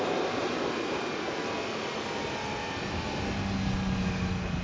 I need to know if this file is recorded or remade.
recorded